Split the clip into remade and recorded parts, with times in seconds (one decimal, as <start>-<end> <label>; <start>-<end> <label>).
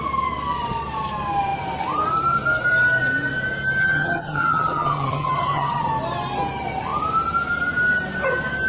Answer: 0.0-3.8 recorded; 3.8-5.9 remade; 5.9-8.7 recorded